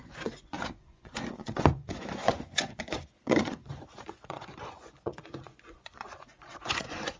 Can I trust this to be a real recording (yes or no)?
no